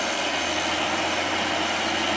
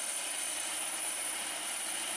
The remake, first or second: second